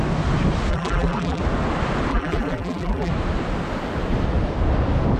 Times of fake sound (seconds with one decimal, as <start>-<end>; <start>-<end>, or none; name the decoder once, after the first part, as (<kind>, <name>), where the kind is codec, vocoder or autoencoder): 0.7-1.4 (vocoder, BigVGAN v2); 2.1-3.1